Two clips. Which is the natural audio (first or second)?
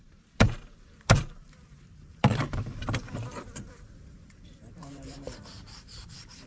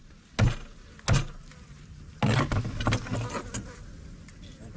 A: second